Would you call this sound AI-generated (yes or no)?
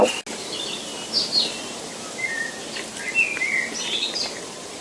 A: no